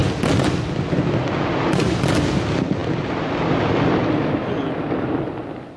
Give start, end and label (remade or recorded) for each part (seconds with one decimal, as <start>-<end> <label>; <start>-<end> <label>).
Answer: 0.0-5.8 recorded